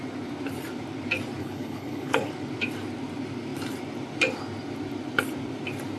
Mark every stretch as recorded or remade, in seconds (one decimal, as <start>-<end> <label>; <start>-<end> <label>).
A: 0.0-1.4 recorded; 1.4-2.3 remade; 2.3-6.0 recorded